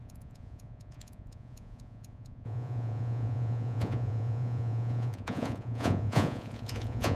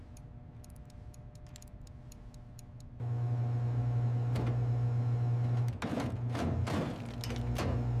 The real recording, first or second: second